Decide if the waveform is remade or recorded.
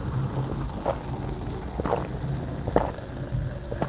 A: recorded